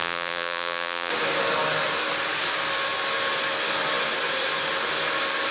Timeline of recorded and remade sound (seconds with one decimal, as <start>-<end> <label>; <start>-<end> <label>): 0.0-1.1 remade; 1.1-5.5 recorded